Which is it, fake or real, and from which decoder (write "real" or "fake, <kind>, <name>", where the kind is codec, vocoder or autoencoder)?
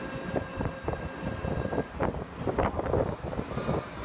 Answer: real